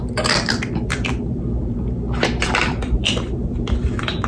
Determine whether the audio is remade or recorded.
remade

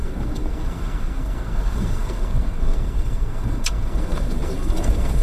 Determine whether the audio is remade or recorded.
remade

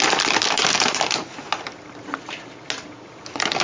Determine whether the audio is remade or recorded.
recorded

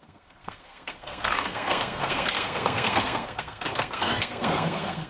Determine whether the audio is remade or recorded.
remade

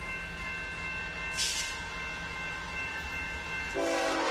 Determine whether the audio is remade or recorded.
recorded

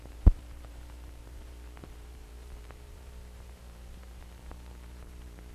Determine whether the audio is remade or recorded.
remade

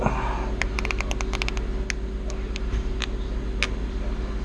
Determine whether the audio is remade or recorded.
recorded